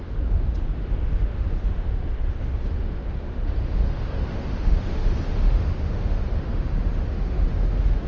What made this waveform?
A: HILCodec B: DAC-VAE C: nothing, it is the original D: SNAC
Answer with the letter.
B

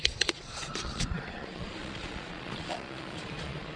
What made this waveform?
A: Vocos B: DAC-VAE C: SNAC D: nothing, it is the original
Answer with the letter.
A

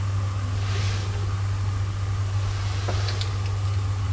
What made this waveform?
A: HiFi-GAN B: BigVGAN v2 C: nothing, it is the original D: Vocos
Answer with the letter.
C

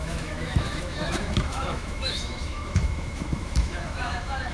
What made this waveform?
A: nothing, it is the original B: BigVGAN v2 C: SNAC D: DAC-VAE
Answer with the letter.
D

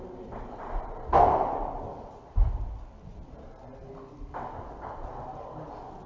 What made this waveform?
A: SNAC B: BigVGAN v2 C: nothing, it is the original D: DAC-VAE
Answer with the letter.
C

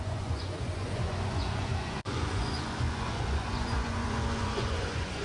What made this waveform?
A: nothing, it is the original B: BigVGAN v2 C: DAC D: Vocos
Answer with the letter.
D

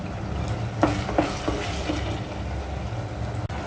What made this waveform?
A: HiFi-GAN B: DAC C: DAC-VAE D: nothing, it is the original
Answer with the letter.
D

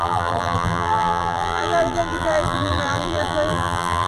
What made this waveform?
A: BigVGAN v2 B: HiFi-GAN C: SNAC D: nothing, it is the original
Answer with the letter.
A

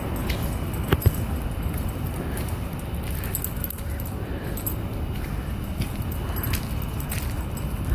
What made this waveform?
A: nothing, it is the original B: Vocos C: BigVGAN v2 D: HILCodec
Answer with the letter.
A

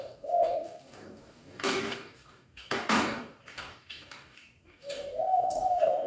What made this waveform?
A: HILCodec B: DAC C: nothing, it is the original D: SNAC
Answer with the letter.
B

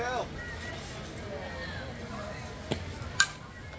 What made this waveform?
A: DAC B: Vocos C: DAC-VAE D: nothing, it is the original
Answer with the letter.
D